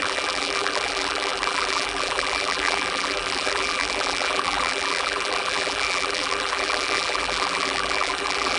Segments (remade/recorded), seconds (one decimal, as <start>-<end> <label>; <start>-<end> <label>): 0.0-8.6 remade